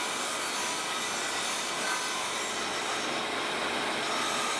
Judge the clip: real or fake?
real